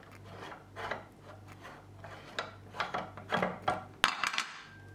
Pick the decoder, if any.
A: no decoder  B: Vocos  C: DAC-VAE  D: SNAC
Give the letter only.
A